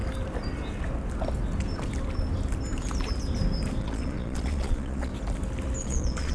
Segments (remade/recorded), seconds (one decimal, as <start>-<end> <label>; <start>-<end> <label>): 0.0-3.8 recorded; 3.8-5.1 remade; 5.1-5.8 recorded; 5.8-6.3 remade